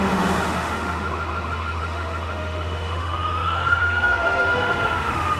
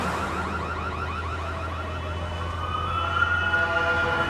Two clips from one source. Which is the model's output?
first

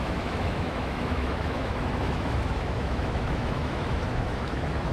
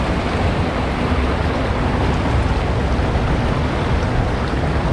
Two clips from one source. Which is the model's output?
first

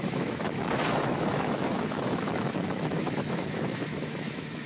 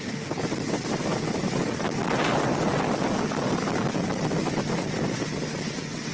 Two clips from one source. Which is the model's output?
first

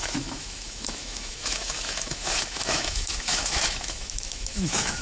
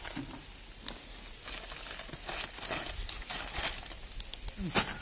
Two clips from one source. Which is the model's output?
first